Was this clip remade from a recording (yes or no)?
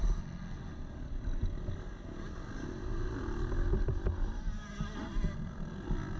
no